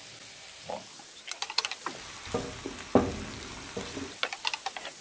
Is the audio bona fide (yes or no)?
yes